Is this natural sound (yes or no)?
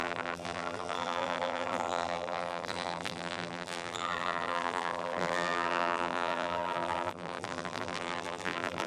no